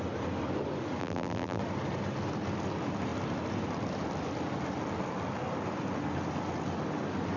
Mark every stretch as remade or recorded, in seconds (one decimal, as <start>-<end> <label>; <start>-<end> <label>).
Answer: 0.0-1.0 recorded; 1.0-1.6 remade; 1.6-7.4 recorded